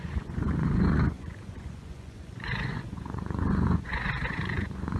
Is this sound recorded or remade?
remade